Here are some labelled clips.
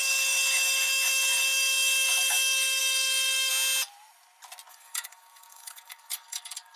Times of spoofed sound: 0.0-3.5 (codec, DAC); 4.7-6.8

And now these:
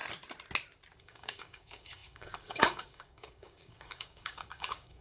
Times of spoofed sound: 1.0-5.0 (codec, DAC)

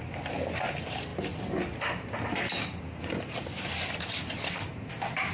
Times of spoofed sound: none

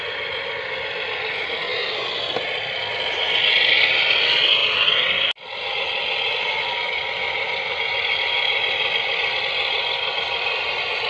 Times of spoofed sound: none